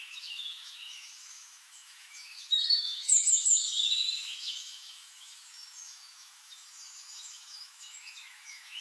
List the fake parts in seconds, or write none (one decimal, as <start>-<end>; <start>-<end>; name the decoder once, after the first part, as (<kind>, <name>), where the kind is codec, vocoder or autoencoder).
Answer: 0.0-8.8 (autoencoder, DAC-VAE)

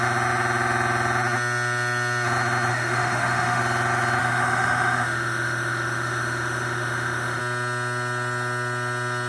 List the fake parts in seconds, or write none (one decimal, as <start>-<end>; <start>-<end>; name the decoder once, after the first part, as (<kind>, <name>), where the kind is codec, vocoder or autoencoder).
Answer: 2.7-3.6 (autoencoder, DAC-VAE); 4.2-7.4

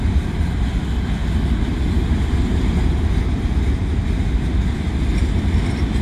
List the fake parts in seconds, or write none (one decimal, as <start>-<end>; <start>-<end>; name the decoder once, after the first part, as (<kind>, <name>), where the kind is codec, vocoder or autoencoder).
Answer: none

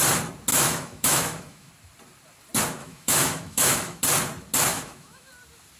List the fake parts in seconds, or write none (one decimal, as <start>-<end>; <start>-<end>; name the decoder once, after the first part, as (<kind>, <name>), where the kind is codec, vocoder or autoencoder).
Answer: 0.5-1.7 (autoencoder, DAC-VAE); 2.8-4.0; 4.7-5.3

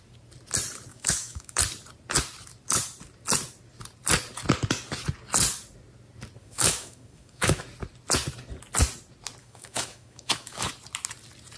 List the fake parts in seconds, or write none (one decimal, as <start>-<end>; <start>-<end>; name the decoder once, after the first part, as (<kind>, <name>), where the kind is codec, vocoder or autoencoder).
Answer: 0.9-1.6 (autoencoder, DAC-VAE); 6.4-7.6; 9.4-10.7

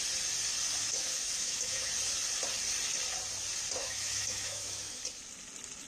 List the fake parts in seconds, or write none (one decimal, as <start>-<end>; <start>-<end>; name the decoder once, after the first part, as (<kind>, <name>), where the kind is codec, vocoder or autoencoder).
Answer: 0.9-1.9 (autoencoder, DAC-VAE); 3.8-5.0

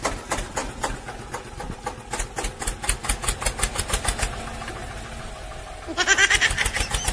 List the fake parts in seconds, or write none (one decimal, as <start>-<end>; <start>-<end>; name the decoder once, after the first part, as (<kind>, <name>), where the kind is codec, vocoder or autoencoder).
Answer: none